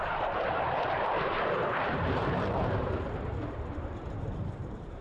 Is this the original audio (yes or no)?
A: no